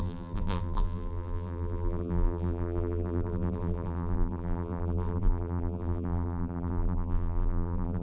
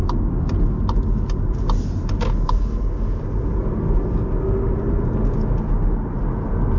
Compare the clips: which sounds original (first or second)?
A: second